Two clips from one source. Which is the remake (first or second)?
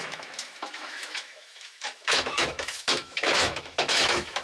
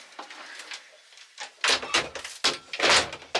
first